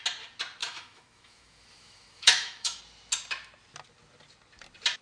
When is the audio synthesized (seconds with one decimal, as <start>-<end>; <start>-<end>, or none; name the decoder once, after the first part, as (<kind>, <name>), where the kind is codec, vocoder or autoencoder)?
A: 0.6-2.8 (autoencoder, DAC-VAE)